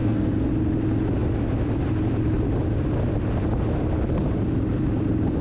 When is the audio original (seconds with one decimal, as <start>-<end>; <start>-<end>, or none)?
0.5-5.4